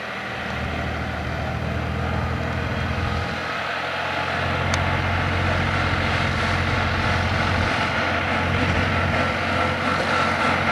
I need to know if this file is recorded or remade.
recorded